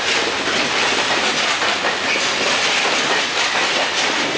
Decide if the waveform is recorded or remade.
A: recorded